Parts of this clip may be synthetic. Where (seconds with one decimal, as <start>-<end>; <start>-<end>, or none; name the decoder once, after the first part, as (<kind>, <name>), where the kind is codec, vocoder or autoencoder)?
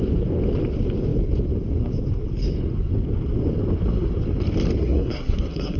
4.8-5.8 (codec, SNAC)